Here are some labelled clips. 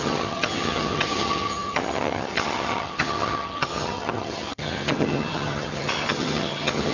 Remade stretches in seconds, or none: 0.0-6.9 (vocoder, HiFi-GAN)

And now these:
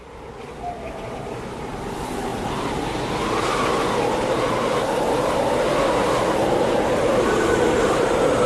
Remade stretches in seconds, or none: 6.0-8.5 (vocoder, BigVGAN v2)

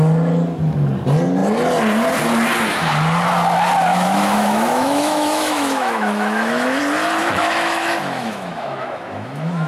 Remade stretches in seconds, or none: 3.9-6.8 (autoencoder, DAC-VAE); 7.2-9.7

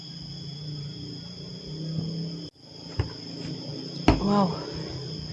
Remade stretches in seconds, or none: 0.5-1.6 (vocoder, BigVGAN v2)

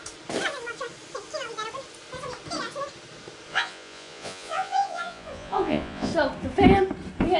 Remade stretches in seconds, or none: 3.5-6.1 (vocoder, Vocos)

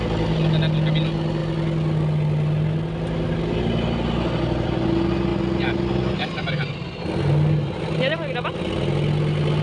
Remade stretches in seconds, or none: none

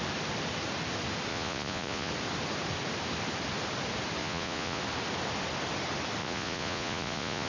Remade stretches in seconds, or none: 1.3-2.1 (vocoder, Vocos); 4.2-4.8; 6.2-7.5